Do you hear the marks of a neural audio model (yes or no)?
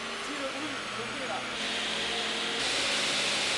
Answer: no